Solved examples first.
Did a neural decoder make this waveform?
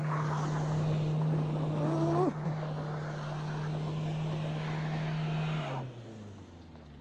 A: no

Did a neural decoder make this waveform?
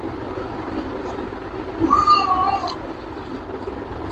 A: no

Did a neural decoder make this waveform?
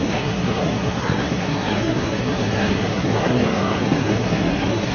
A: yes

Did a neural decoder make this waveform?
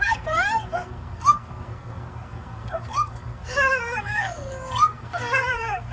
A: yes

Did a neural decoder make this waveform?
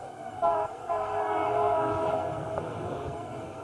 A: yes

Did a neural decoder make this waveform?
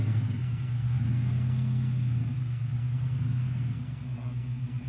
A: yes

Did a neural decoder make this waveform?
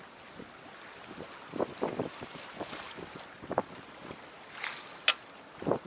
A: no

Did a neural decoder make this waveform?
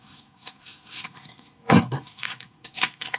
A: yes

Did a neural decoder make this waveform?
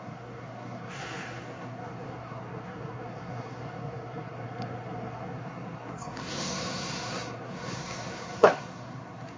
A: yes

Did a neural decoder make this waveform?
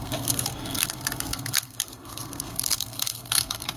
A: yes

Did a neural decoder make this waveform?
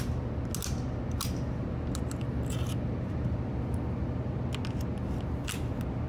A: no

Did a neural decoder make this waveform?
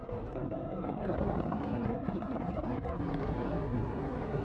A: yes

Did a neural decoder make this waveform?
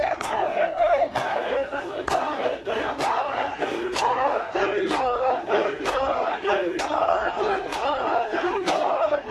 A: yes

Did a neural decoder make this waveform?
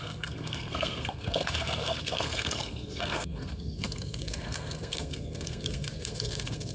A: yes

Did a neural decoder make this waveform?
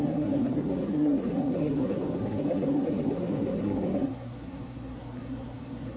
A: yes